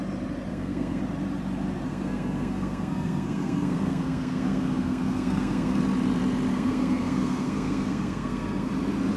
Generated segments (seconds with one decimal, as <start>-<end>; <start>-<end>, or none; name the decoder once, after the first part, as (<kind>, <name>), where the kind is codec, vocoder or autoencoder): 0.5-1.0 (codec, SNAC); 1.9-5.8; 6.5-8.7